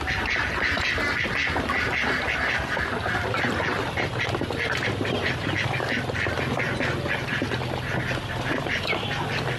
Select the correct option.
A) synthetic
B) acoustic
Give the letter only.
B